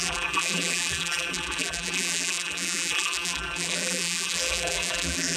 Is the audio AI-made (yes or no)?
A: yes